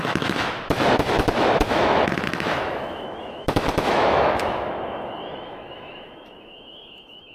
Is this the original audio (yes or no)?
no